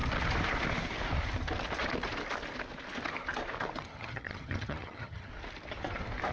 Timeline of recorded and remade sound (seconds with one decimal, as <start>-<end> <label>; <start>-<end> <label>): 0.0-3.8 recorded; 3.8-5.3 remade; 5.3-6.3 recorded

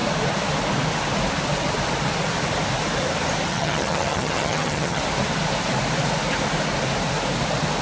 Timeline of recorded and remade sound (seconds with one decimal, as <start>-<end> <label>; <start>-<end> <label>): 0.0-3.5 recorded; 3.5-5.0 remade; 5.0-7.8 recorded